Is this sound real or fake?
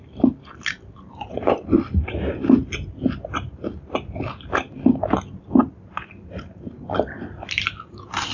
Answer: real